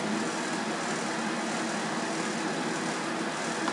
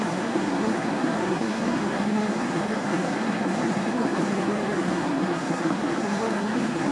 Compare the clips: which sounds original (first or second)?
first